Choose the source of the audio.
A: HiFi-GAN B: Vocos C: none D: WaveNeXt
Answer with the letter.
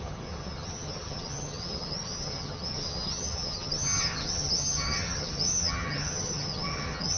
A